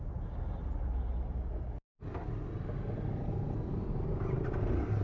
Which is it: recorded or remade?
recorded